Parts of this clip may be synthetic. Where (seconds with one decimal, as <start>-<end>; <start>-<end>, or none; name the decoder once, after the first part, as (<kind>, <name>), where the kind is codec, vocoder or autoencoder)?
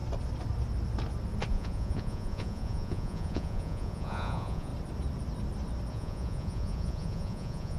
1.5-4.7 (vocoder, Vocos); 5.9-7.8